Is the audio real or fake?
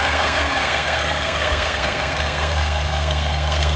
fake